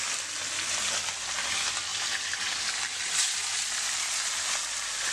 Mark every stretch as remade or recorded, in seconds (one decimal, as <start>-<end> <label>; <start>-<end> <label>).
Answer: 0.0-5.1 recorded